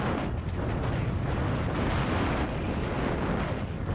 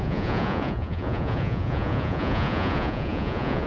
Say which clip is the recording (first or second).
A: first